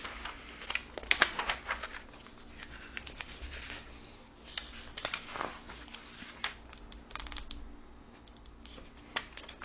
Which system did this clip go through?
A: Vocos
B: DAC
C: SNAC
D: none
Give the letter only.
D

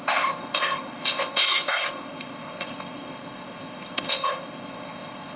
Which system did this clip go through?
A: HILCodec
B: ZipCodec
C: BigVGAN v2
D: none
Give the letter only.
B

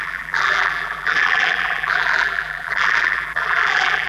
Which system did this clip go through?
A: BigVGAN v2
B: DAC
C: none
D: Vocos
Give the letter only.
A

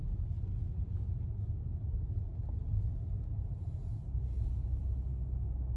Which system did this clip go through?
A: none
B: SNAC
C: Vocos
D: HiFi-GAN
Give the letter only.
A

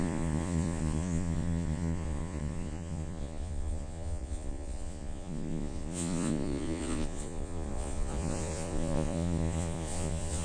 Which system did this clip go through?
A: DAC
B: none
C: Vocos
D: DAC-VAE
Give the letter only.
C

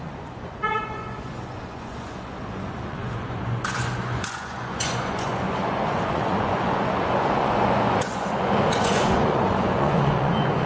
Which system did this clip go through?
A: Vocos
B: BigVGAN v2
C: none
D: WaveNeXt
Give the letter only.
A